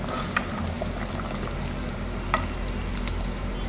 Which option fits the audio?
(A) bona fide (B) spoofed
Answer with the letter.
A